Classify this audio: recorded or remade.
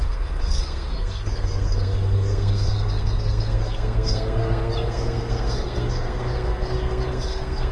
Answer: remade